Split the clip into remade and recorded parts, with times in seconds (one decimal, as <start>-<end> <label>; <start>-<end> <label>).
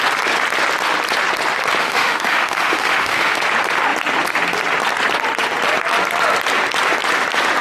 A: 0.0-1.8 recorded; 1.8-3.4 remade; 3.4-7.6 recorded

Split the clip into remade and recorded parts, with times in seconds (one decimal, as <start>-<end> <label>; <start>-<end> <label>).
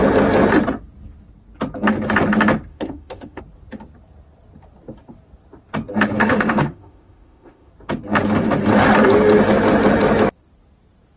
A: 0.0-2.7 recorded; 2.7-3.4 remade; 3.4-6.2 recorded; 6.2-7.7 remade; 7.7-11.2 recorded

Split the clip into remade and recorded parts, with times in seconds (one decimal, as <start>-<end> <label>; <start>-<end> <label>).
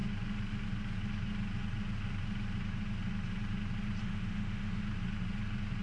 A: 0.0-4.0 recorded; 4.0-4.8 remade; 4.8-5.8 recorded